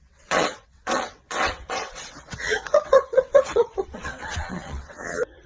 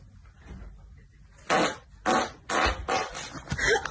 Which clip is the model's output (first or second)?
first